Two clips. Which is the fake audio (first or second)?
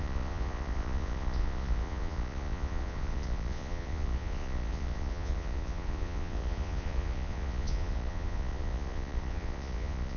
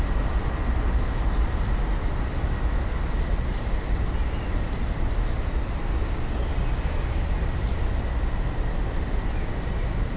first